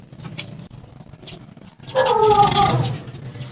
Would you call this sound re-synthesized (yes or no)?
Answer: no